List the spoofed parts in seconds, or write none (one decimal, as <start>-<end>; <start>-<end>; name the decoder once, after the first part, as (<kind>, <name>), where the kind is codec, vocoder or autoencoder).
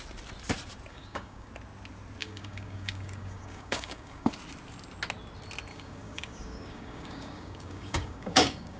0.9-1.5 (codec, DAC); 2.2-4.3; 5.7-8.8